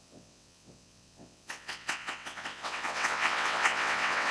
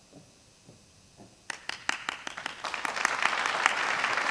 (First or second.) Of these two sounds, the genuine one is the second